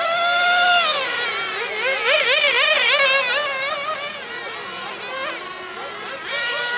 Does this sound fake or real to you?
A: real